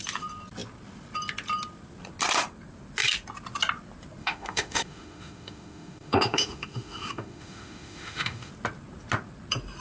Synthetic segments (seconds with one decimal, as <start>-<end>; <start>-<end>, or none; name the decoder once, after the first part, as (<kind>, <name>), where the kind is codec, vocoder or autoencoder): 4.2-8.5 (autoencoder, DAC-VAE)